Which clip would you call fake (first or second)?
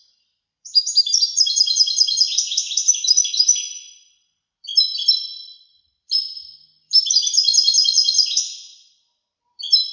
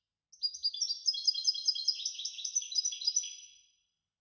first